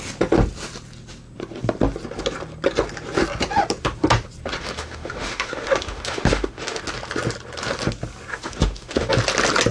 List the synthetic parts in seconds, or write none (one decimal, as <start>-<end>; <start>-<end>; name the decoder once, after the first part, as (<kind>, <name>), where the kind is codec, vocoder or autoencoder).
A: 4.6-6.8 (autoencoder, DAC-VAE); 8.3-9.1